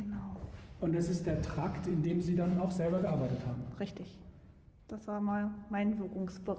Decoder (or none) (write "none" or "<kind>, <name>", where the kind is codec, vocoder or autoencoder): none